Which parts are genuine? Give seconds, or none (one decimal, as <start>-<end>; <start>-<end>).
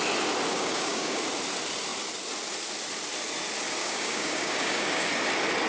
0.0-0.5; 1.2-3.8; 5.1-5.7